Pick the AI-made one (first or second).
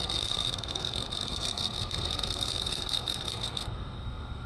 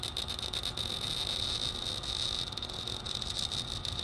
first